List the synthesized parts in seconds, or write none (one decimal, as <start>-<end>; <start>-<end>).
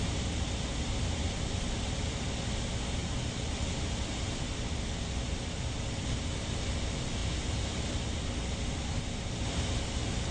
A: none